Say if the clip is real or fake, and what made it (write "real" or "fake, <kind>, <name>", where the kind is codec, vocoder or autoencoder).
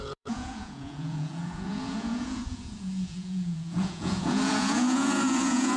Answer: fake, vocoder, Vocos